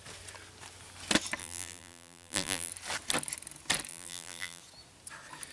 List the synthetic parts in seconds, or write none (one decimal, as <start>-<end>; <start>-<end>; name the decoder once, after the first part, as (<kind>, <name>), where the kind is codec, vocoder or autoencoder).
1.4-2.7 (vocoder, BigVGAN v2); 3.9-4.6